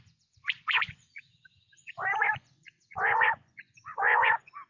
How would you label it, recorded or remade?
remade